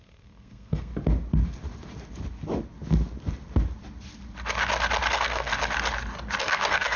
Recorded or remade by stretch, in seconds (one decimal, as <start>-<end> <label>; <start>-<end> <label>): 0.0-0.9 remade; 0.9-5.1 recorded; 5.1-5.5 remade; 5.5-6.4 recorded; 6.4-7.0 remade